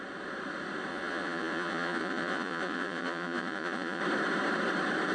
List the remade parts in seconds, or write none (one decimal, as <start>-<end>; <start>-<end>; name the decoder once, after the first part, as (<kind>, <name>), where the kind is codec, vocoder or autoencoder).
0.9-4.0 (vocoder, Vocos)